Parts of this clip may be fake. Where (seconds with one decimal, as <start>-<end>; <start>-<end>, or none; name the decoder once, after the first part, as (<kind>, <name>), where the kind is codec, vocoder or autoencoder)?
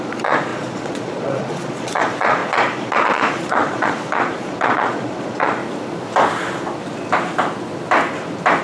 0.0-5.6 (vocoder, Vocos)